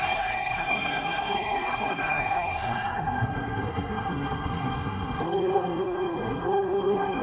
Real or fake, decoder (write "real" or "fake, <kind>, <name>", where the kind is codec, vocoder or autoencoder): fake, codec, SNAC